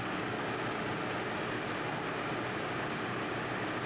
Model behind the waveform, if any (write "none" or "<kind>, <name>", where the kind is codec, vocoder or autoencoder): none